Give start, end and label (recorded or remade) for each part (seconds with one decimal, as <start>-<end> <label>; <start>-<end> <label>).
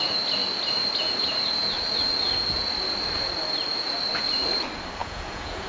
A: 0.0-5.0 recorded; 5.0-5.7 remade